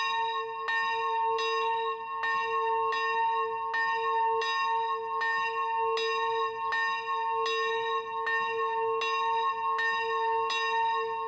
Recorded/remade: recorded